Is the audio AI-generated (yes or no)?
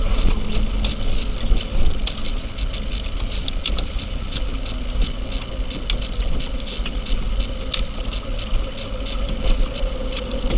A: no